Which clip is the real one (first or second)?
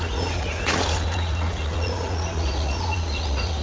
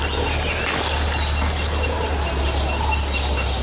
second